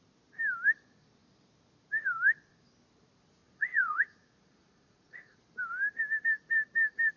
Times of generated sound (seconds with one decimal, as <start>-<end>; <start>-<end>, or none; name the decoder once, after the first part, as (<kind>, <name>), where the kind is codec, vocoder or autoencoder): 3.4-5.4 (vocoder, Vocos)